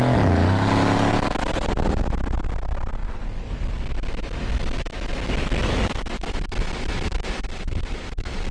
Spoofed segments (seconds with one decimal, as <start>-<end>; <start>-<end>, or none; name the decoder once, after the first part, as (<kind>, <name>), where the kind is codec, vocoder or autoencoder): 5.6-8.5 (vocoder, BigVGAN v2)